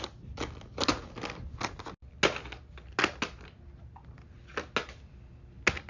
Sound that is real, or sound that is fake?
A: real